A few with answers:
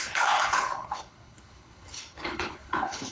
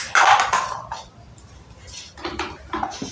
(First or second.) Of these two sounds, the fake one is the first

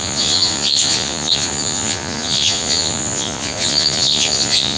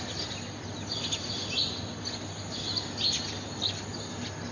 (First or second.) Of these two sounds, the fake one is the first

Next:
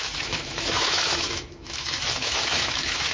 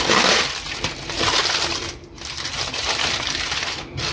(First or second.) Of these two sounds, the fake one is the first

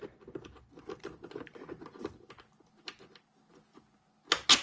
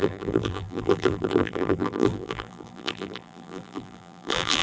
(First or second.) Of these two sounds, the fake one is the second